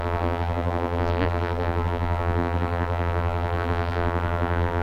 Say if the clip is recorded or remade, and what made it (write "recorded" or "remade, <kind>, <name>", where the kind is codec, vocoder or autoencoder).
remade, vocoder, BigVGAN v2